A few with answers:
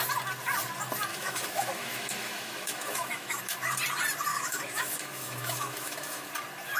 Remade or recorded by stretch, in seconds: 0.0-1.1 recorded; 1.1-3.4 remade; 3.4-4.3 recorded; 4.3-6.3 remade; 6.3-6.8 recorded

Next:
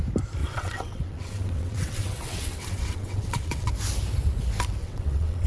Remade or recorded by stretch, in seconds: 0.0-0.4 recorded; 0.4-3.7 remade; 3.7-4.8 recorded; 4.8-5.5 remade

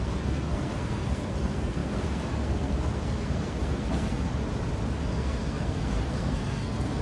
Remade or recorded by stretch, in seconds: 0.0-4.3 remade; 4.3-5.0 recorded; 5.0-7.0 remade

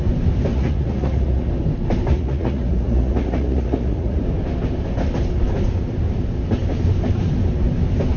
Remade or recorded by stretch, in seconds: 0.0-0.5 recorded; 0.5-1.5 remade; 1.5-2.1 recorded; 2.1-4.2 remade; 4.2-8.2 recorded

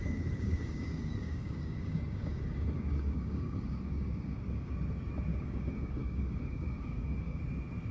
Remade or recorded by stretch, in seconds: 0.0-4.7 remade; 4.7-5.3 recorded; 5.3-7.4 remade; 7.4-7.9 recorded